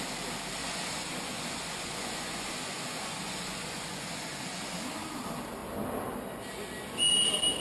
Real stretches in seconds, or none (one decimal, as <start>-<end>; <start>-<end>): 0.0-0.6; 4.8-7.6